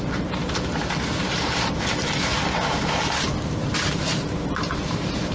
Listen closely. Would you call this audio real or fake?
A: fake